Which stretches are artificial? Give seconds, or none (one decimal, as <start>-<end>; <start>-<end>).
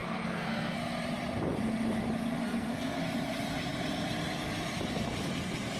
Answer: 0.0-0.8; 2.4-3.0